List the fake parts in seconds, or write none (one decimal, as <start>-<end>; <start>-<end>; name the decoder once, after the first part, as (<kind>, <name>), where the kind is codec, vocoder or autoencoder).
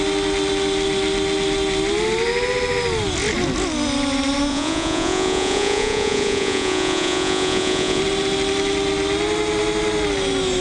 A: 4.5-8.0 (vocoder, Vocos)